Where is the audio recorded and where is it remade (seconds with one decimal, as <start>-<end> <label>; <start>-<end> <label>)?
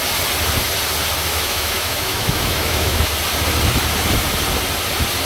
0.0-1.3 recorded; 1.3-3.1 remade; 3.1-5.2 recorded